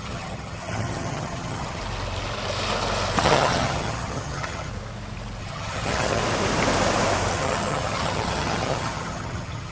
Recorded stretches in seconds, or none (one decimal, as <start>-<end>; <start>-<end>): 1.8-3.2; 4.7-5.4; 6.2-7.3